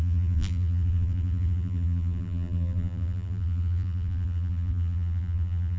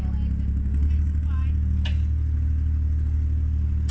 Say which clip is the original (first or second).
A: second